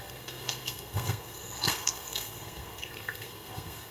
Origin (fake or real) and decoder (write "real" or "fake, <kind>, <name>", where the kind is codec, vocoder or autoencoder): fake, codec, SNAC